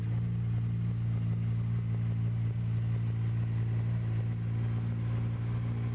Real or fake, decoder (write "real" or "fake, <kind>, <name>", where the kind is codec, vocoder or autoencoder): real